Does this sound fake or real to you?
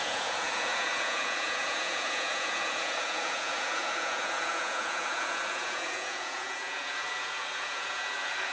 fake